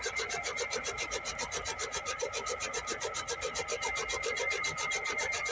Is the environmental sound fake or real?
real